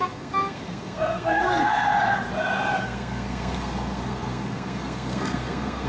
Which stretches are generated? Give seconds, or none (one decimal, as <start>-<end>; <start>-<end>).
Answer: 0.0-1.9; 2.8-5.9